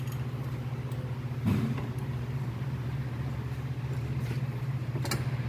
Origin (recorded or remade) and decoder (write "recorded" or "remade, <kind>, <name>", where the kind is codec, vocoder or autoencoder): recorded